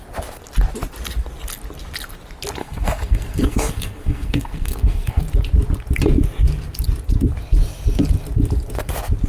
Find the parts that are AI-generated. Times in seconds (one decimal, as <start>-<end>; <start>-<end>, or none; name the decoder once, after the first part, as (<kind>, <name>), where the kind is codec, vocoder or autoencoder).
2.6-5.2 (codec, SNAC)